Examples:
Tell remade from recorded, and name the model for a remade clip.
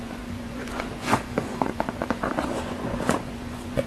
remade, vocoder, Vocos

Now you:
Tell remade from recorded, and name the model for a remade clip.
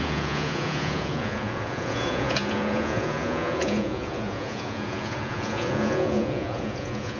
remade, vocoder, Vocos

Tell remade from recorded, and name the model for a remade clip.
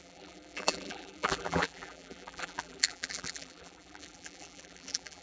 remade, vocoder, BigVGAN v2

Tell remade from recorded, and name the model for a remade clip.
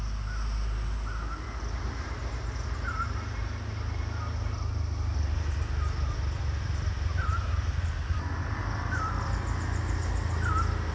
recorded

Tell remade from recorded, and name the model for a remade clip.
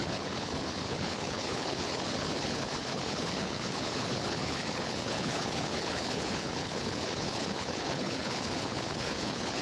remade, codec, HILCodec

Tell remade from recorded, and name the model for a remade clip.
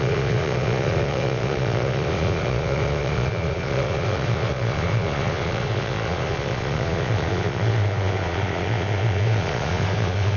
remade, vocoder, Vocos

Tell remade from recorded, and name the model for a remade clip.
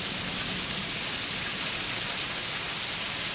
recorded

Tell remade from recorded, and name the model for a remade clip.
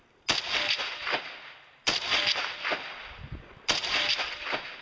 recorded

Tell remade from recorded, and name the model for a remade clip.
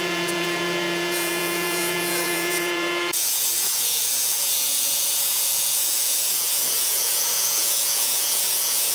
remade, vocoder, Vocos